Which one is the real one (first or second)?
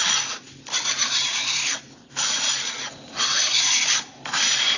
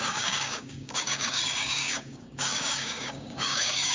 first